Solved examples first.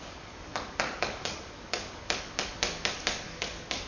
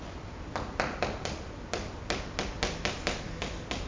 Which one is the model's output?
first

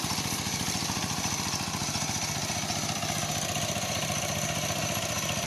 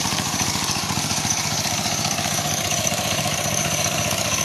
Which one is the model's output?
second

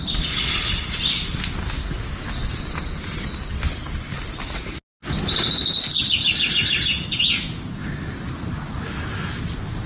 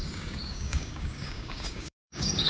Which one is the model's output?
second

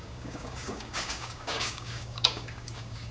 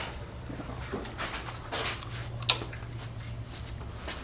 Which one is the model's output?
first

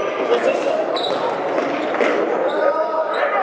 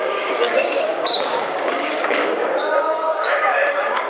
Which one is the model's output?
second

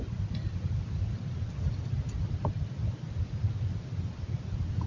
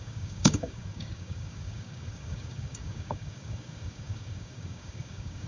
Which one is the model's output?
second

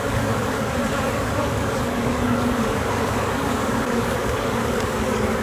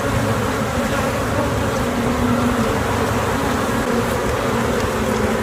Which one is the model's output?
first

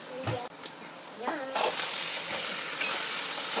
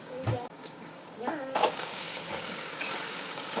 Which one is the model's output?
second